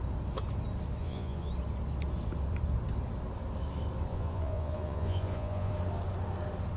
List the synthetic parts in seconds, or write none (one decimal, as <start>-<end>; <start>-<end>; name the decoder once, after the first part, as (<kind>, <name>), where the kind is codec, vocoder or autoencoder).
1.0-1.5 (vocoder, Vocos); 4.1-5.7